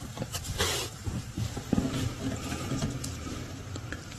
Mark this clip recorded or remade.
remade